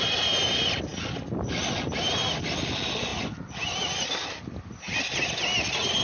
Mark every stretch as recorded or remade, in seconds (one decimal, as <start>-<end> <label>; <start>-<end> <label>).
0.0-6.0 recorded